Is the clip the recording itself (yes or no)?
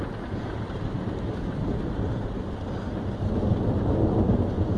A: yes